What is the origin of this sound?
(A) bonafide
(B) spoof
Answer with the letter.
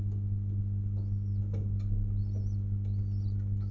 A